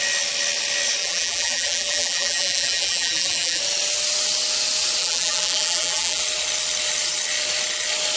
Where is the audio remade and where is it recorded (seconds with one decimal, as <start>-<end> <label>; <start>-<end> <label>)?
0.0-1.0 recorded; 1.0-3.6 remade; 3.6-5.0 recorded; 5.0-6.2 remade; 6.2-8.2 recorded